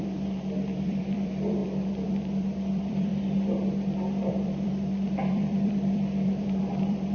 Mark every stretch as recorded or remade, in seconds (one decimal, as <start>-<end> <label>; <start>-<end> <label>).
0.0-3.1 remade; 3.1-4.3 recorded; 4.3-7.1 remade